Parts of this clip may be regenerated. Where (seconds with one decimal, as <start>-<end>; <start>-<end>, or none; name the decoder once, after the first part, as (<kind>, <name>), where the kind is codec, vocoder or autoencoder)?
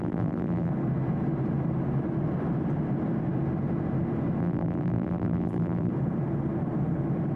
0.0-0.7 (vocoder, BigVGAN v2); 4.4-5.9